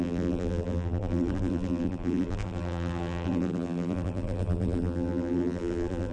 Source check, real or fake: fake